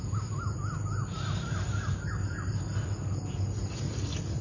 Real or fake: real